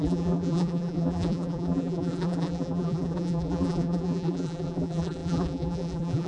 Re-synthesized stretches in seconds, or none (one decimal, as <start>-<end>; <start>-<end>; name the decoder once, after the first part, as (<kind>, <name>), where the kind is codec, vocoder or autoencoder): 0.0-6.3 (vocoder, BigVGAN v2)